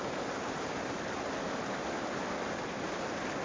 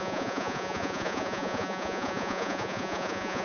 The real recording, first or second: first